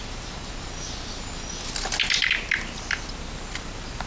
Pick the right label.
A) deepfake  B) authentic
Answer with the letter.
B